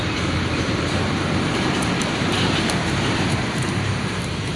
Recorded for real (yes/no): no